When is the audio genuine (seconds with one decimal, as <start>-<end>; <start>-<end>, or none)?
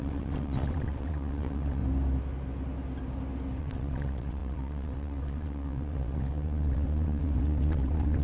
1.8-3.6